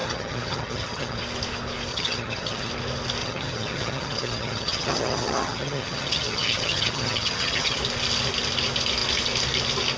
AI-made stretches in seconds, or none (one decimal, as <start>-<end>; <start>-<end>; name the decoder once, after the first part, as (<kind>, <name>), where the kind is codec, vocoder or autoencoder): 0.0-1.2 (vocoder, HiFi-GAN); 1.9-2.7; 3.2-7.8